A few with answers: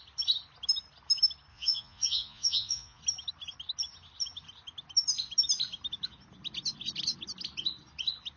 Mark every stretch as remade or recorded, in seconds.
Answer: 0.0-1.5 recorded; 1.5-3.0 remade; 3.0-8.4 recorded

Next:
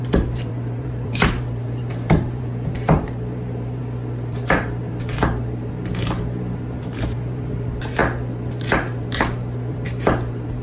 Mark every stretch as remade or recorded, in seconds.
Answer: 0.0-3.8 remade; 3.8-4.4 recorded; 4.4-8.0 remade; 8.0-9.7 recorded; 9.7-10.6 remade

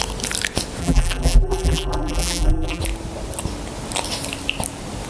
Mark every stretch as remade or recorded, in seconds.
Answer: 0.0-0.8 recorded; 0.8-2.8 remade; 2.8-5.1 recorded

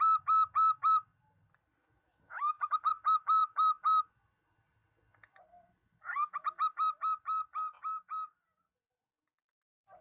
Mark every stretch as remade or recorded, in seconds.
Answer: 0.0-1.8 recorded; 1.8-2.9 remade; 2.9-3.4 recorded; 3.4-4.2 remade; 4.2-10.0 recorded

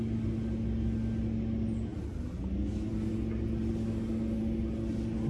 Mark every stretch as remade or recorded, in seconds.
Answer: 0.0-5.3 recorded

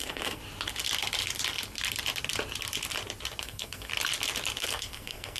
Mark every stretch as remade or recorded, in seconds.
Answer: 0.0-0.4 remade; 0.4-3.4 recorded; 3.4-3.9 remade; 3.9-4.6 recorded; 4.6-5.4 remade

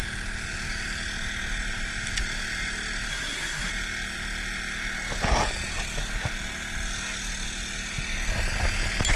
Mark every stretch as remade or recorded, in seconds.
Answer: 0.0-3.1 recorded; 3.1-3.7 remade; 3.7-9.2 recorded

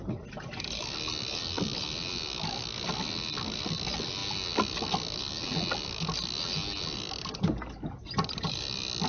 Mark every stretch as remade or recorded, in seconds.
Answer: 0.0-9.1 recorded